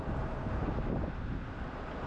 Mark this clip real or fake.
real